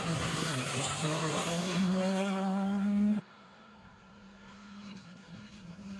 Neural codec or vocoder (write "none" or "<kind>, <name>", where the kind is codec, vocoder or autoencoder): codec, SNAC